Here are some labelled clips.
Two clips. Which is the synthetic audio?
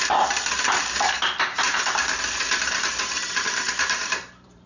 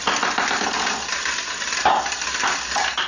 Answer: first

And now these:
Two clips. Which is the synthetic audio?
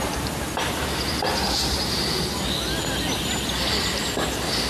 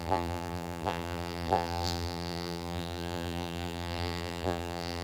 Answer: second